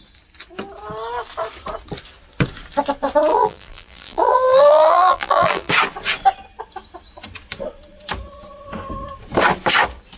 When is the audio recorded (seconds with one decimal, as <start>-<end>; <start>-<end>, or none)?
0.0-3.3; 5.7-10.2